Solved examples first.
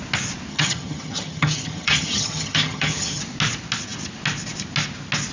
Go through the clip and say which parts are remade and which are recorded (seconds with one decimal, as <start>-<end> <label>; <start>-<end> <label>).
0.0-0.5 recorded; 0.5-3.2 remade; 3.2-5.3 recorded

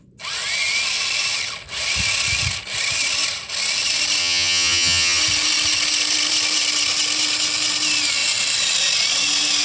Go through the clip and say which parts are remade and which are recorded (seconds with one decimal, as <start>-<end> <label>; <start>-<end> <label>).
0.0-4.2 recorded; 4.2-5.2 remade; 5.2-9.6 recorded

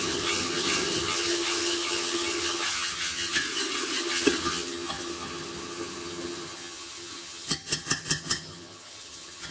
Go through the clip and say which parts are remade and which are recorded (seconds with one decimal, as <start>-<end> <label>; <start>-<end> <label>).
0.0-3.4 remade; 3.4-4.0 recorded; 4.0-9.5 remade

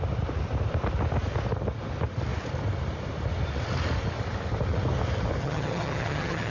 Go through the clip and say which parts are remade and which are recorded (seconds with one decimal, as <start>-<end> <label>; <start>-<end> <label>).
0.0-5.4 recorded; 5.4-6.5 remade

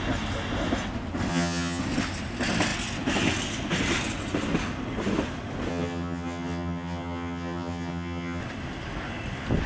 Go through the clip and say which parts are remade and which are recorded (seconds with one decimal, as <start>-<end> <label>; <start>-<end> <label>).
0.0-1.3 recorded; 1.3-1.8 remade; 1.8-5.7 recorded; 5.7-8.4 remade; 8.4-9.7 recorded